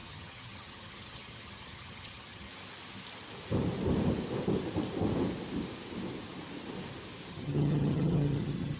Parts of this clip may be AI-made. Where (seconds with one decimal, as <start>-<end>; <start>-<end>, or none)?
0.0-2.5; 7.3-8.8